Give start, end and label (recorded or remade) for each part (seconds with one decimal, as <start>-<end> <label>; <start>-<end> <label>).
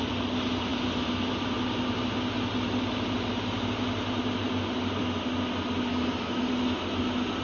0.0-5.9 recorded; 5.9-6.5 remade; 6.5-7.4 recorded